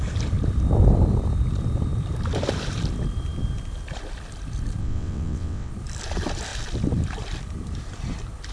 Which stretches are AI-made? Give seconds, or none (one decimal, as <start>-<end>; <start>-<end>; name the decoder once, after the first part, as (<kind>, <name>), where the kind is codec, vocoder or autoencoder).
4.8-5.7 (vocoder, WaveNeXt)